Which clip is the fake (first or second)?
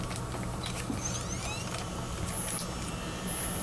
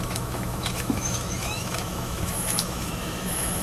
second